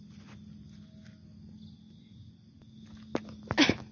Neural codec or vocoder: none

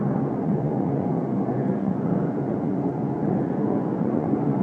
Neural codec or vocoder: vocoder, Vocos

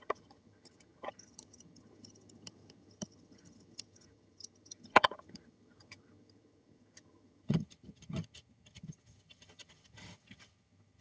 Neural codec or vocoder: vocoder, HiFi-GAN